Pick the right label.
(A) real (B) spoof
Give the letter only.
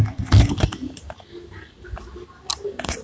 A